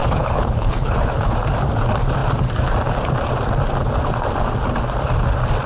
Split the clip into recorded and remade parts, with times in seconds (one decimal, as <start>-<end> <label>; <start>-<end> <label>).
0.0-1.3 remade; 1.3-5.7 recorded